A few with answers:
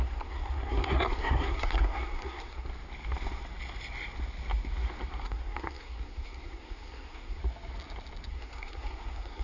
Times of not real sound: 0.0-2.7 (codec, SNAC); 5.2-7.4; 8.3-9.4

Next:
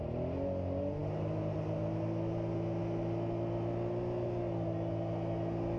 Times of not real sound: none

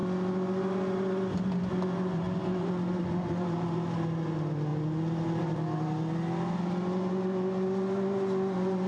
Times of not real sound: none

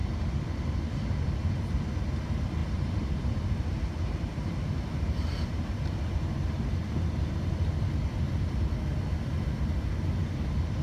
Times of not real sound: 2.6-6.1 (vocoder, BigVGAN v2)

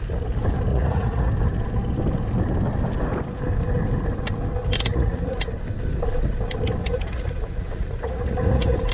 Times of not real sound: 0.7-1.3 (vocoder, Vocos); 4.9-5.5; 6.8-8.9

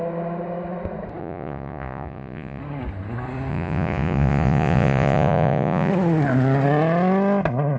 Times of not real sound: 1.2-2.6 (vocoder, Vocos); 3.5-5.9